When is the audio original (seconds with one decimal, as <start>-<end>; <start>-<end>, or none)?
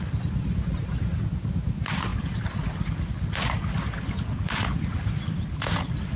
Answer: 0.0-6.2